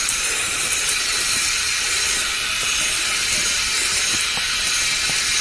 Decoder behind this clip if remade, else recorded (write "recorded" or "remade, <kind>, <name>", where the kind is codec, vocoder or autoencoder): remade, vocoder, BigVGAN v2